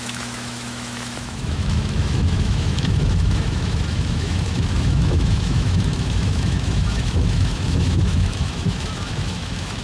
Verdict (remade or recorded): remade